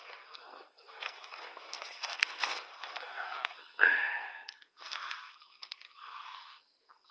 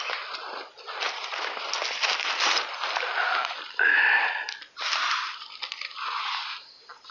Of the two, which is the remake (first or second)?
first